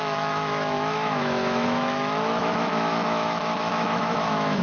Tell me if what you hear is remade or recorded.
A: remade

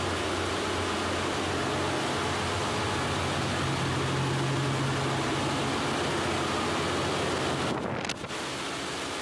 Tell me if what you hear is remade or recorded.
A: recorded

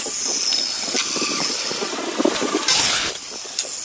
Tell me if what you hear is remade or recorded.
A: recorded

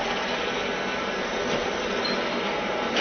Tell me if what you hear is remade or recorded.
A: recorded